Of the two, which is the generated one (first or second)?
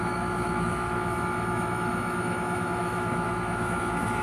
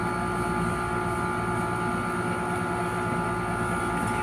first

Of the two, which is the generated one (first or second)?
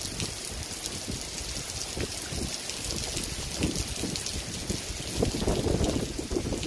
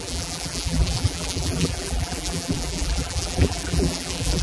second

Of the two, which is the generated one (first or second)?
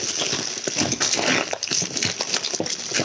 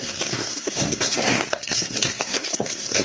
second